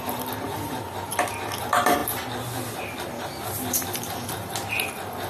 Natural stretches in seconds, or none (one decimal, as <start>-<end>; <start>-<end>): 1.1-1.6; 2.0-5.3